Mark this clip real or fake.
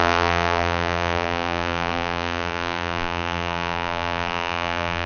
fake